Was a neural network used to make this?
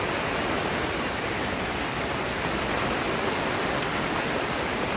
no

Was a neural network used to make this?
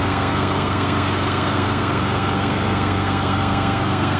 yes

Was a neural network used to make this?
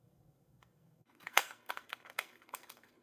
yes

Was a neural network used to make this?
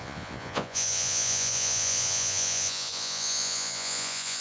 yes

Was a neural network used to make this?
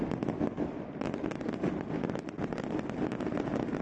no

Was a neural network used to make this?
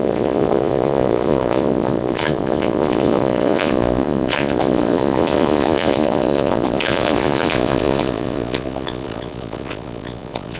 yes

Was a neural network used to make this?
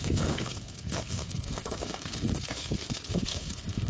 yes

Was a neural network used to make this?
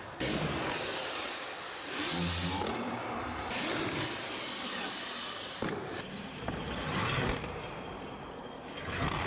no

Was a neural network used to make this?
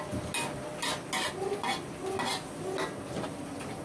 no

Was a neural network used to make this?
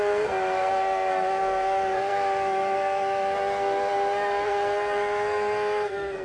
yes